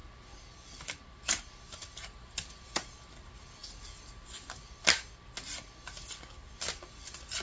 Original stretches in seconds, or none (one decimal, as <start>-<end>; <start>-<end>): 0.0-7.4